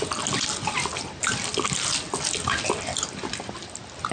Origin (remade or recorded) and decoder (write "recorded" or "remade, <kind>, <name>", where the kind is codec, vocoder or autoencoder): recorded